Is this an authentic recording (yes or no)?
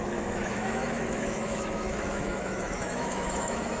no